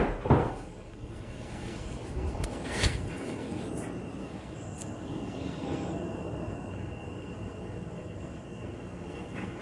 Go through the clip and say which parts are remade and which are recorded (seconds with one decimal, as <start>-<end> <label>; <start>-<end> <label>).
0.0-0.4 recorded; 0.4-3.6 remade; 3.6-4.2 recorded; 4.2-9.6 remade